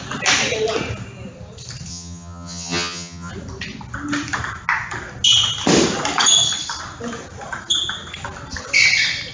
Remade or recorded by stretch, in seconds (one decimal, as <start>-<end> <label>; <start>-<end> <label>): 0.0-1.9 recorded; 1.9-3.3 remade; 3.3-9.3 recorded